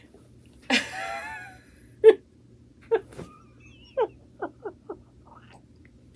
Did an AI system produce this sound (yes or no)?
no